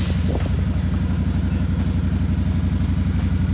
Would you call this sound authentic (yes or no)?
yes